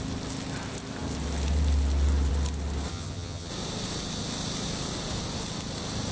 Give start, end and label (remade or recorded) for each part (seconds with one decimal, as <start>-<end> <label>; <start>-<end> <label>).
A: 0.0-2.9 recorded; 2.9-3.5 remade; 3.5-6.1 recorded